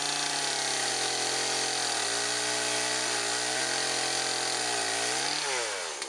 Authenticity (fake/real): real